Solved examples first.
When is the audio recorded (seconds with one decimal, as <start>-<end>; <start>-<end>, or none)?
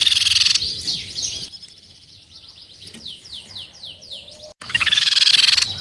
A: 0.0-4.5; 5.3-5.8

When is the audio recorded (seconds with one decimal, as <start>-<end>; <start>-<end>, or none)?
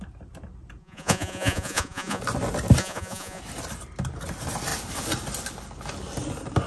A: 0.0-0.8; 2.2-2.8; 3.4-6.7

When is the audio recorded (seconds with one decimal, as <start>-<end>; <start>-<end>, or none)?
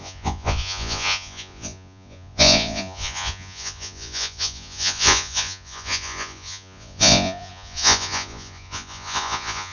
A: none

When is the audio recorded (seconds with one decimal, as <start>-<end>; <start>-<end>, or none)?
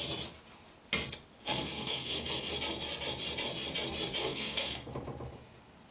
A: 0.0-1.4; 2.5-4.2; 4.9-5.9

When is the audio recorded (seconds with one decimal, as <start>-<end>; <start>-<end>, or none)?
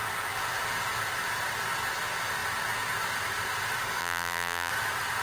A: 0.0-4.0; 4.7-5.2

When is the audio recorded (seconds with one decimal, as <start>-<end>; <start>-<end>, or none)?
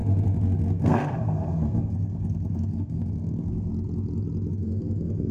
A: 3.7-4.5